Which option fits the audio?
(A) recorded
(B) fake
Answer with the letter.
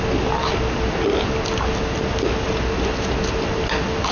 A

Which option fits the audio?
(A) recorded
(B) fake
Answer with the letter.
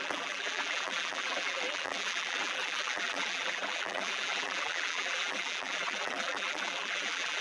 B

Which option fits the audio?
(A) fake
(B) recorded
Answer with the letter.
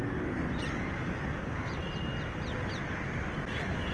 B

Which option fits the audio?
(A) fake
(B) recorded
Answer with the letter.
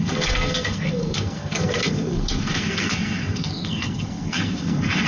A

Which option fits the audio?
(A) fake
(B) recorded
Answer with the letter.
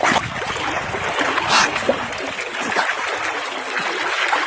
B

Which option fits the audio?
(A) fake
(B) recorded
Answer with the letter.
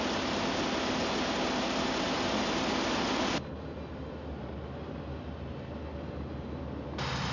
B